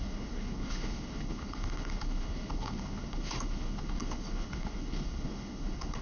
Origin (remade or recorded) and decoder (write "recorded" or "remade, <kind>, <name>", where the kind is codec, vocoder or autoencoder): remade, codec, HILCodec